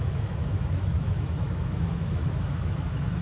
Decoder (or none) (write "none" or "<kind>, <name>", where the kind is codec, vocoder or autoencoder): autoencoder, DAC-VAE